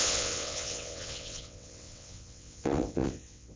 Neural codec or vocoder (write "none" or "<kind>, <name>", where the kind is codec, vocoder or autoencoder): vocoder, WaveNeXt